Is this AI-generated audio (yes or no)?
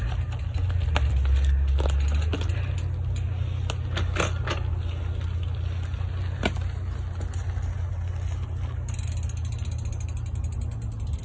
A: no